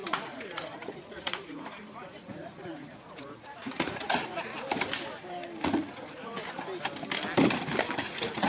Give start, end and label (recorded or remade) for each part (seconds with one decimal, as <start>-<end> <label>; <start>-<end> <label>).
0.0-4.5 remade; 4.5-5.6 recorded; 5.6-6.4 remade; 6.4-8.0 recorded; 8.0-8.5 remade